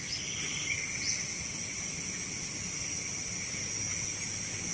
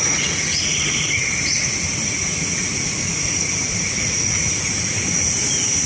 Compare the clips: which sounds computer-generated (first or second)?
second